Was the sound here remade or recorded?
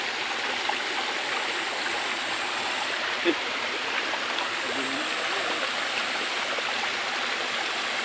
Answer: recorded